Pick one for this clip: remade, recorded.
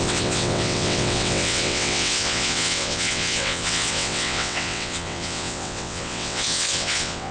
remade